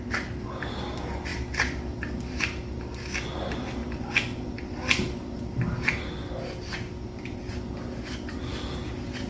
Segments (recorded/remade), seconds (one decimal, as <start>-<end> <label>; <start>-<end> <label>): 0.0-9.3 recorded